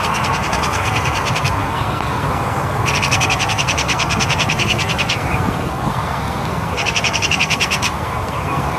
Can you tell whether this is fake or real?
fake